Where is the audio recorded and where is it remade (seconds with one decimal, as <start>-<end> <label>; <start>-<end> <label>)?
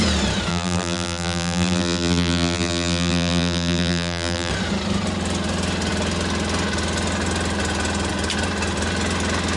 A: 0.0-0.5 recorded; 0.5-4.5 remade; 4.5-9.6 recorded